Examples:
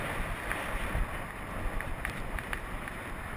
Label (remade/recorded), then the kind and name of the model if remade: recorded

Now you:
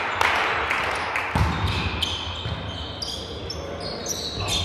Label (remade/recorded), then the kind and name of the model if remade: recorded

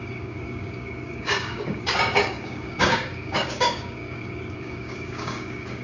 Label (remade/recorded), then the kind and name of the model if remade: remade, codec, DAC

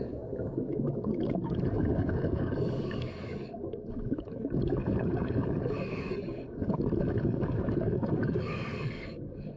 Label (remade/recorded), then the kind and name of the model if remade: remade, codec, DAC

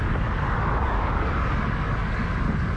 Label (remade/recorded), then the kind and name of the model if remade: remade, codec, DAC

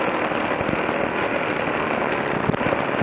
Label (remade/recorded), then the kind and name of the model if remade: recorded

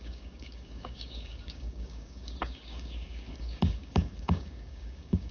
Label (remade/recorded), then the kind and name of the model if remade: remade, codec, DAC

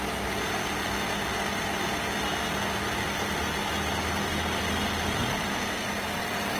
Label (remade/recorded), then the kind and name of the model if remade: recorded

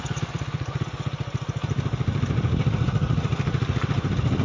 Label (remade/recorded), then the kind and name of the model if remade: recorded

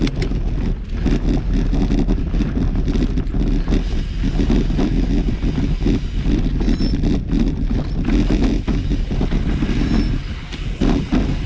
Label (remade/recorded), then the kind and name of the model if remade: recorded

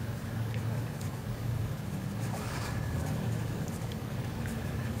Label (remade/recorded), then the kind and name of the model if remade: remade, codec, DAC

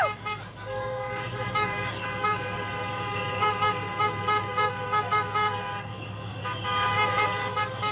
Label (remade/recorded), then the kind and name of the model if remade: remade, codec, DAC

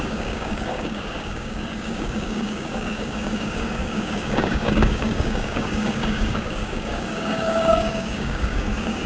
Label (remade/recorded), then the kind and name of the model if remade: remade, codec, DAC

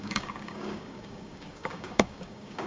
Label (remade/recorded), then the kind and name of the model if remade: remade, codec, DAC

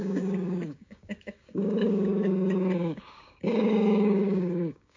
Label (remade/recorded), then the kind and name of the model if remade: remade, codec, DAC